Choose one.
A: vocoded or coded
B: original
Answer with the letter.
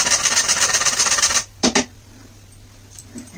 A